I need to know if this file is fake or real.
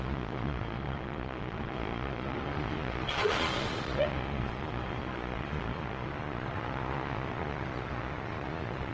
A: fake